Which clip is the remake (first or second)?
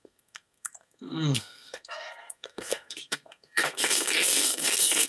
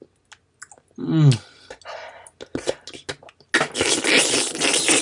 first